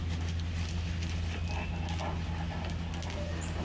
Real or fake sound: real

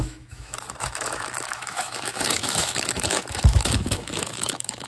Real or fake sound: fake